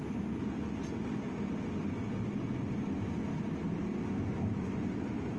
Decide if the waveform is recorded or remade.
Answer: recorded